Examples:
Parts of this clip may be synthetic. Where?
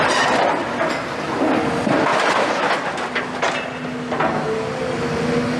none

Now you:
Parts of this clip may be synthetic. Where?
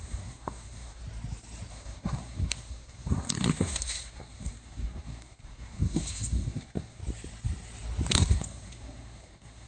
0.0-1.0 (codec, SNAC); 1.7-7.0; 8.1-9.7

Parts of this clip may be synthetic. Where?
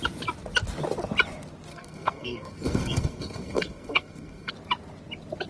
1.7-4.5 (codec, SNAC)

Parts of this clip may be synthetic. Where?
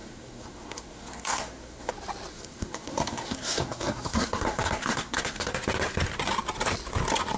0.0-1.9 (codec, SNAC); 2.3-5.5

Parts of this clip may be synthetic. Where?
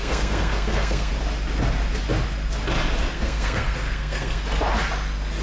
0.0-1.1 (codec, SNAC); 3.0-4.4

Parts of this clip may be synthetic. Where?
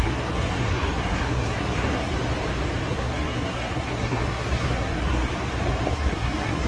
0.0-2.1 (codec, SNAC); 2.9-5.3; 5.9-6.7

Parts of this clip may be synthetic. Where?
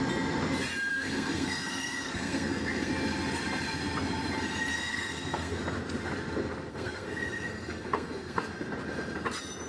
0.9-2.9 (codec, SNAC); 4.7-5.6; 6.7-8.4